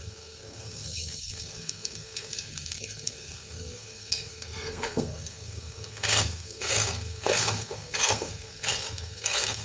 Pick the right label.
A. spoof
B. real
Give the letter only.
A